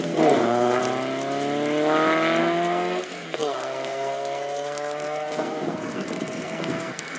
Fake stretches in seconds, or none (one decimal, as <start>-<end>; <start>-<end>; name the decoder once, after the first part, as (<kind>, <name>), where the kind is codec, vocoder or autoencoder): 0.0-0.8 (codec, SNAC); 2.4-7.2